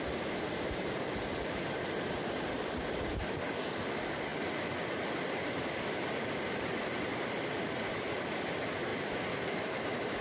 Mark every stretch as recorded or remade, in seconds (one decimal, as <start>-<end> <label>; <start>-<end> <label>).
0.0-10.2 remade